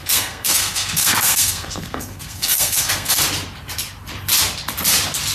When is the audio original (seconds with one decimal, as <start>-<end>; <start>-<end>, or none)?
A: 3.2-5.3